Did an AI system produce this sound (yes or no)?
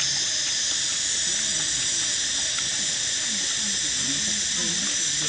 no